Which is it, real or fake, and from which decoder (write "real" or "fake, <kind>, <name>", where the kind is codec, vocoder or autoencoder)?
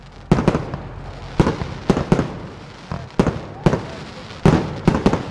real